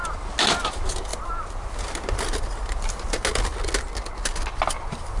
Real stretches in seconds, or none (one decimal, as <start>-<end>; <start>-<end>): 0.0-5.2